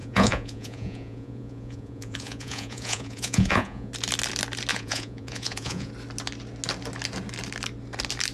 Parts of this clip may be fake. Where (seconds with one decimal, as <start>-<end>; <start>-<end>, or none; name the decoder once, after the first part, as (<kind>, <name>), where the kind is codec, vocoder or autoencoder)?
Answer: 0.0-3.9 (vocoder, Vocos); 4.7-5.9